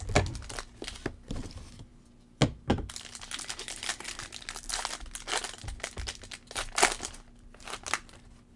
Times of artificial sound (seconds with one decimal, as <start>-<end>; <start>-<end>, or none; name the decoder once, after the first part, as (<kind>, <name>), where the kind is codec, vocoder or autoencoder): none